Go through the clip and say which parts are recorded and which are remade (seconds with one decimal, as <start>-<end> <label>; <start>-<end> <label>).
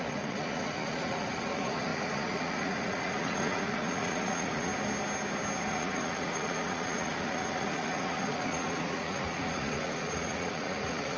0.0-4.7 remade; 4.7-5.7 recorded; 5.7-11.2 remade